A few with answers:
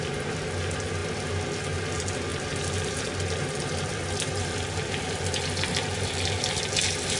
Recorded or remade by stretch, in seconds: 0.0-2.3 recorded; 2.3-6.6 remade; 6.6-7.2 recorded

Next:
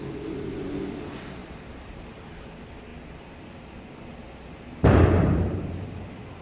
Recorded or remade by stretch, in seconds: 0.0-1.4 recorded; 1.4-2.1 remade; 2.1-6.4 recorded

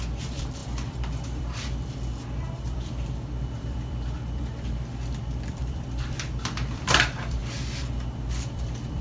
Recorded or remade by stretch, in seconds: 0.0-7.4 remade; 7.4-7.9 recorded; 7.9-9.0 remade

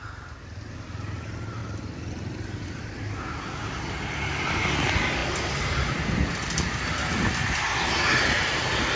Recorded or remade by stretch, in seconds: 0.0-1.6 recorded; 1.6-3.0 remade; 3.0-9.0 recorded

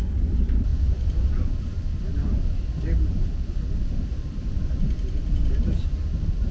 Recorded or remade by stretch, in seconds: 0.0-6.5 recorded

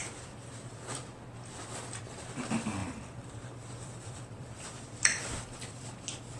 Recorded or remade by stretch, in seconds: 0.0-1.0 remade; 1.0-2.8 recorded; 2.8-5.8 remade; 5.8-6.4 recorded